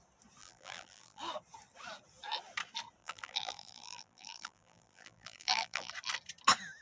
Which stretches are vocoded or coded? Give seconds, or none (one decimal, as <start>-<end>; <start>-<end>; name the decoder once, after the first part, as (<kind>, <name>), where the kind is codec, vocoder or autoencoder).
0.4-1.2 (vocoder, BigVGAN v2); 3.0-5.9